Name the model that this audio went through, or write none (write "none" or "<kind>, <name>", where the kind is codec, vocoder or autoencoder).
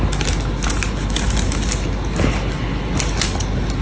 none